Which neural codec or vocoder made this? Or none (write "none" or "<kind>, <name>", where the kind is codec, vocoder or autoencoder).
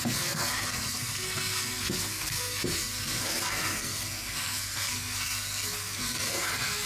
codec, SNAC